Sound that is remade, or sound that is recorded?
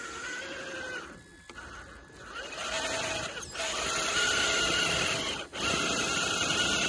recorded